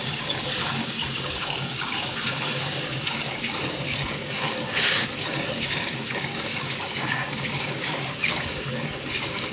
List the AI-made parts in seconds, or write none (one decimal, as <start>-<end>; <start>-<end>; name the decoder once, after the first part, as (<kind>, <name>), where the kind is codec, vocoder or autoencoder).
0.0-9.5 (codec, DAC)